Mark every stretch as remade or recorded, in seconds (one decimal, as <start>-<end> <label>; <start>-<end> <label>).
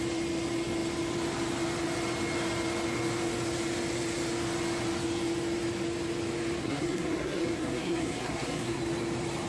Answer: 0.0-6.6 recorded; 6.6-8.8 remade; 8.8-9.5 recorded